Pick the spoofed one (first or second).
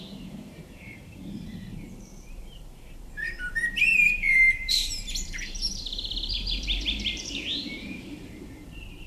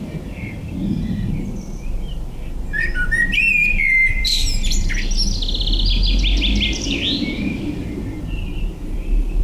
first